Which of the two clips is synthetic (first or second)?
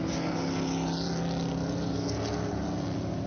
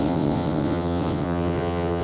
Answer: second